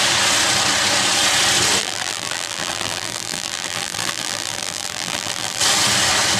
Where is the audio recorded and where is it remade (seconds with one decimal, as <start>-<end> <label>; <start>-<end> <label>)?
0.0-1.8 recorded; 1.8-5.6 remade; 5.6-6.4 recorded